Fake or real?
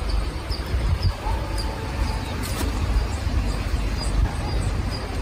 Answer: real